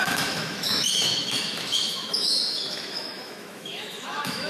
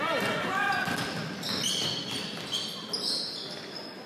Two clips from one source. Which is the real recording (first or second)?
second